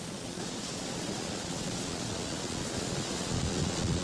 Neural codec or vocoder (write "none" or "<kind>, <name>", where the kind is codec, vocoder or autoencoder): vocoder, Vocos